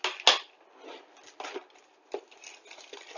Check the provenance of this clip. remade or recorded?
recorded